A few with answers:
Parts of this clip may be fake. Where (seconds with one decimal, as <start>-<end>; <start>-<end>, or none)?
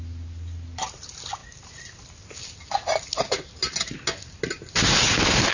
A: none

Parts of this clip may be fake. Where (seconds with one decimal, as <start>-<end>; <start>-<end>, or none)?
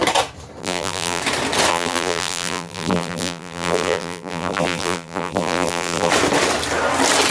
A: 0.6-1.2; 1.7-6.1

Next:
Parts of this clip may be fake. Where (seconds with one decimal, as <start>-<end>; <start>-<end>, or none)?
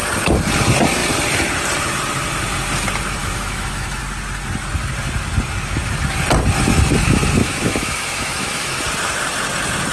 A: 3.2-4.0; 7.4-8.8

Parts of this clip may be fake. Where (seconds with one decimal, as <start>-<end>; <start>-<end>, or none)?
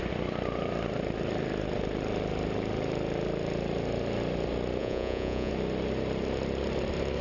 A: 4.8-5.5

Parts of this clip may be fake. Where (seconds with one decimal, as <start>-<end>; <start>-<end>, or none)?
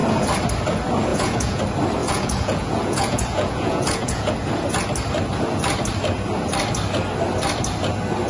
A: 1.1-1.6; 2.0-4.3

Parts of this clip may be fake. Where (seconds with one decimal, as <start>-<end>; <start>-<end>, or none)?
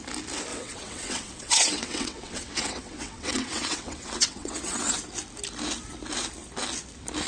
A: 0.5-4.9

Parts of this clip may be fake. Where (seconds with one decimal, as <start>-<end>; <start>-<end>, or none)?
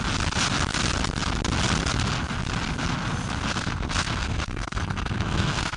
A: 3.5-5.8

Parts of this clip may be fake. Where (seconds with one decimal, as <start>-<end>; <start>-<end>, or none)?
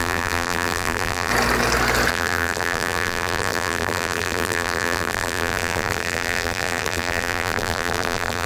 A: 0.0-1.3; 2.1-8.5